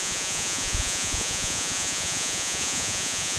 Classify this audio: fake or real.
fake